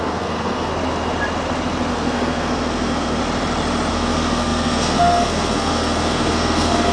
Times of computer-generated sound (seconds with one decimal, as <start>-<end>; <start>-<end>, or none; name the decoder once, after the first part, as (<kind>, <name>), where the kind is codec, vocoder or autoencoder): 0.0-0.7 (codec, SNAC); 1.9-3.2; 3.9-6.9